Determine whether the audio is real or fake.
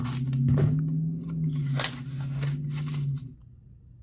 real